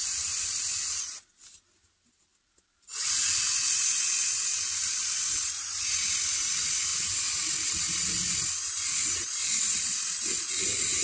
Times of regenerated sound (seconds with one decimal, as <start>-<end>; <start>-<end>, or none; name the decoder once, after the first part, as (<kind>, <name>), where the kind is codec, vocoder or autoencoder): none